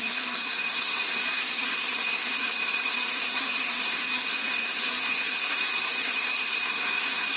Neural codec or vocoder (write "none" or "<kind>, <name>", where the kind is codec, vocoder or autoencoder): codec, SNAC